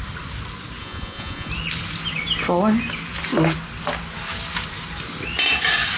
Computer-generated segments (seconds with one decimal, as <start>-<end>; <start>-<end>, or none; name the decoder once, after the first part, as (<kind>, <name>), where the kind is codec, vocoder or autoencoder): 0.8-1.5 (vocoder, Vocos)